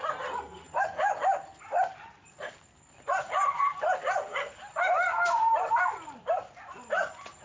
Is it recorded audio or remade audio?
recorded